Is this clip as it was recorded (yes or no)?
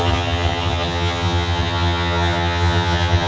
no